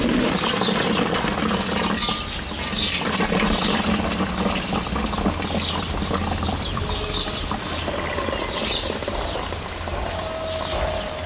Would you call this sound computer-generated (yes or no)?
no